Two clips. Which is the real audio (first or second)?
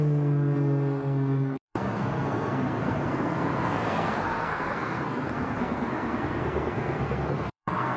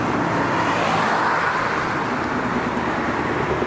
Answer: second